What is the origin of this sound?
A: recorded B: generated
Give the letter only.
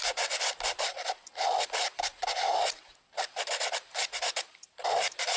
A